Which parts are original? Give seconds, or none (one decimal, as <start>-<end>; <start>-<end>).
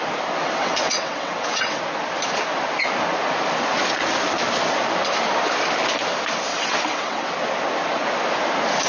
0.0-0.4; 1.8-6.5; 7.3-8.9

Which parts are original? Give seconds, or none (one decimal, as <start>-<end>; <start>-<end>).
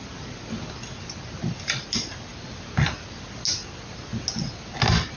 0.0-5.2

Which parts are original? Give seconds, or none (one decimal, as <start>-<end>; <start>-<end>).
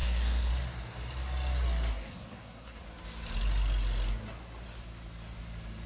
0.5-1.9; 2.8-5.9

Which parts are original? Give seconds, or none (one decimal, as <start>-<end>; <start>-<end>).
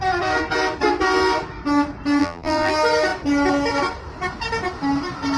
0.0-2.2; 2.7-5.4